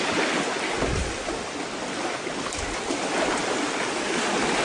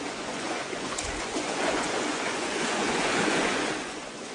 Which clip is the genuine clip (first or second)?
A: first